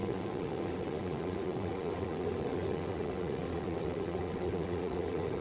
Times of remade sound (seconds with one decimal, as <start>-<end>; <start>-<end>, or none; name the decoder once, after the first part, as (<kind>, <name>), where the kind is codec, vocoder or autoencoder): 0.0-5.4 (vocoder, WaveNeXt)